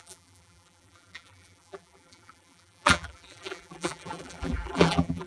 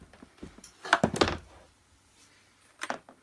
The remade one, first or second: first